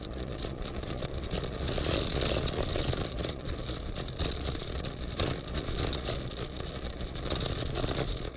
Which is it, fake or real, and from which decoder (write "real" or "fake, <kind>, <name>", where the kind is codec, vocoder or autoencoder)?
fake, vocoder, Vocos